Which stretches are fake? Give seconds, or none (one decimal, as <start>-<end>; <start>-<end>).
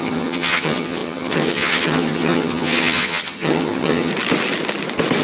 0.0-4.1